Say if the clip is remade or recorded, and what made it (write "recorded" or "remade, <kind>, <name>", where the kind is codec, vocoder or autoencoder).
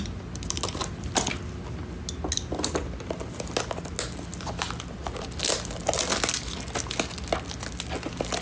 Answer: recorded